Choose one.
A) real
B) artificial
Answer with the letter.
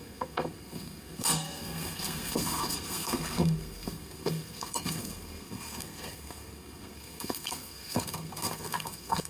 B